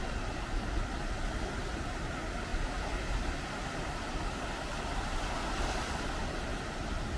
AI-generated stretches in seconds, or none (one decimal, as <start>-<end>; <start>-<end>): none